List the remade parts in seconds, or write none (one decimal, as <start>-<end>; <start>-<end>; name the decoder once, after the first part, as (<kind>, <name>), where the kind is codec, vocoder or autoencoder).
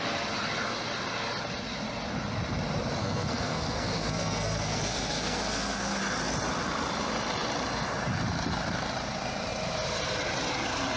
3.0-6.0 (codec, SNAC)